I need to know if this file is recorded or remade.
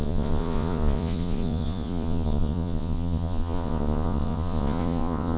remade